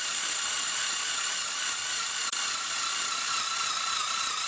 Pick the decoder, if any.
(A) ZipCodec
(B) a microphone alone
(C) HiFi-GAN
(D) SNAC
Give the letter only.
B